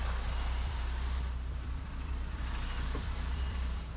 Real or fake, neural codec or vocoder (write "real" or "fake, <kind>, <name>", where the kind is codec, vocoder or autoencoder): fake, vocoder, BigVGAN v2